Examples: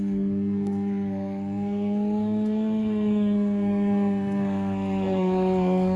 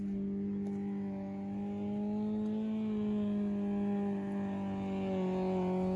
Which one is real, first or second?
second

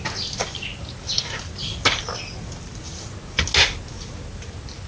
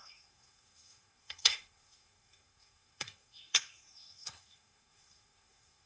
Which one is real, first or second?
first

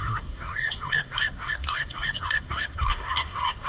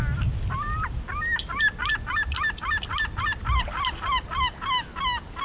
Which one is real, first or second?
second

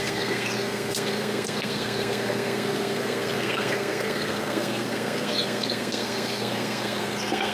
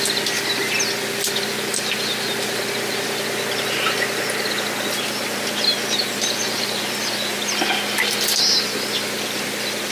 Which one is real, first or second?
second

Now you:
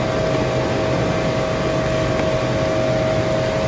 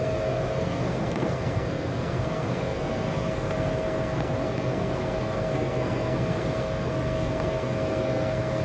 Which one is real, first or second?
first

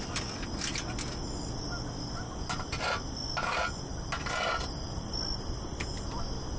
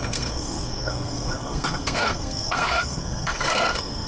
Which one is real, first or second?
first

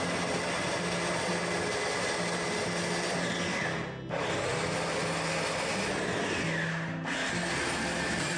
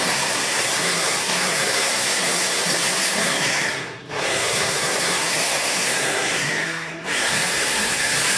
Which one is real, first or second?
first